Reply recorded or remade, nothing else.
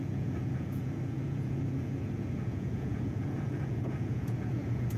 remade